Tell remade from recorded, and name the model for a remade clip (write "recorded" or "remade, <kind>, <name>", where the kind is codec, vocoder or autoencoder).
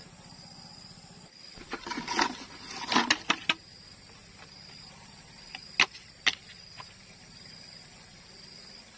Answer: recorded